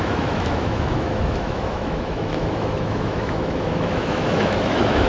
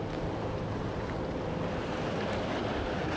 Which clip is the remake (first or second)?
first